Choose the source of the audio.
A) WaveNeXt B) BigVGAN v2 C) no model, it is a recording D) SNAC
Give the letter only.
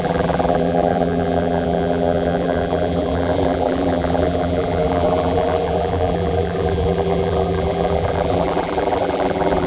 B